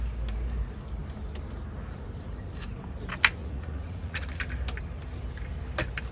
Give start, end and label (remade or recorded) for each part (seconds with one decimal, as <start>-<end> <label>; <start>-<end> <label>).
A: 0.0-3.4 recorded; 3.4-4.4 remade; 4.4-6.1 recorded